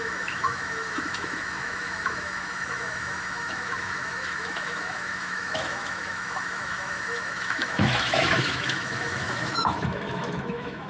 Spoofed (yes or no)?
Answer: yes